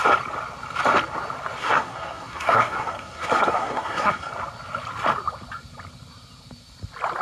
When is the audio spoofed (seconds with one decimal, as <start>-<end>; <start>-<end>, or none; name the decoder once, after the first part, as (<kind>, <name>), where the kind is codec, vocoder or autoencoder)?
1.6-4.3 (codec, SNAC)